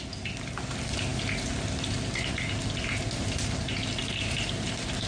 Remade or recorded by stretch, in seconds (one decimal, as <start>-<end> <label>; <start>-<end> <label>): 0.0-5.1 recorded

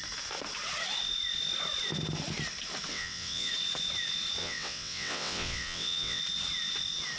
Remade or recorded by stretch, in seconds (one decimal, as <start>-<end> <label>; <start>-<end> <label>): 0.0-2.9 recorded; 2.9-3.5 remade; 3.5-4.4 recorded; 4.4-6.2 remade; 6.2-7.2 recorded